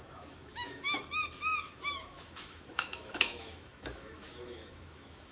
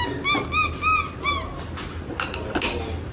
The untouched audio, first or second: second